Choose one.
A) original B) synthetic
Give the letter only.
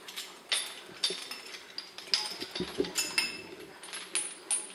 A